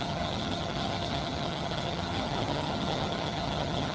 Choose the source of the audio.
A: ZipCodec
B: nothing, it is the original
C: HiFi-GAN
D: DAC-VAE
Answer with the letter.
C